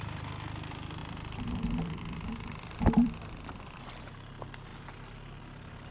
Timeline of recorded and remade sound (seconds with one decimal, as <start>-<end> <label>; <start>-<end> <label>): 0.0-1.0 recorded; 1.0-3.8 remade; 3.8-5.9 recorded